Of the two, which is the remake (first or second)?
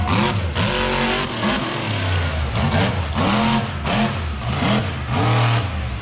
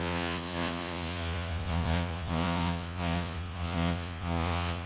second